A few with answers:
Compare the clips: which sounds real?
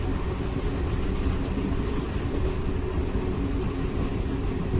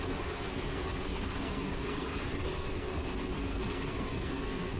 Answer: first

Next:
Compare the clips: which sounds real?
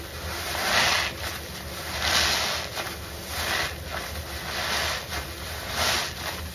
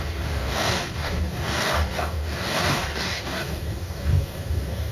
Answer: first